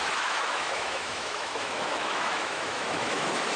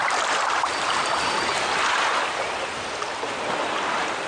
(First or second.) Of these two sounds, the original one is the second